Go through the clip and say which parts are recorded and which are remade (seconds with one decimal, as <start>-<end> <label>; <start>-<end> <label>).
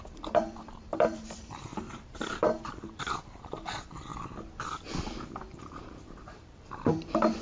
0.0-4.1 remade; 4.1-5.1 recorded; 5.1-7.4 remade